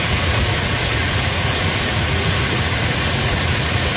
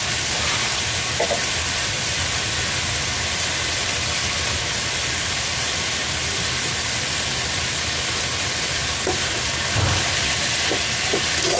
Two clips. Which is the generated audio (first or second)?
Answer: first